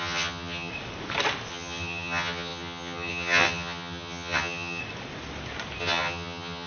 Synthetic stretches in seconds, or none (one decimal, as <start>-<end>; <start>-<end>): 0.0-0.7; 1.5-4.8; 5.8-6.7